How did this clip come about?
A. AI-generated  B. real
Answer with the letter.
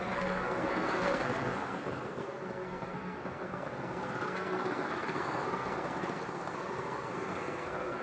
A